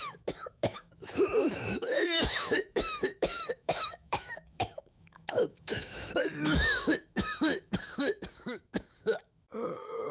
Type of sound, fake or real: fake